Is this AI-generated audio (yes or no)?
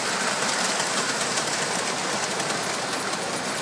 no